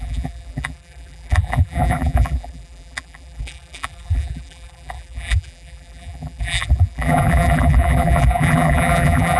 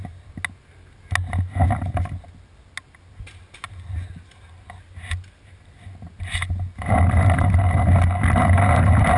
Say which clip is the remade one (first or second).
first